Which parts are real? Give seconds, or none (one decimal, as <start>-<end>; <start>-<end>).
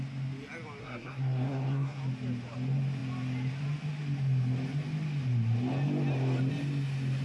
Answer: 0.0-0.8; 2.0-7.2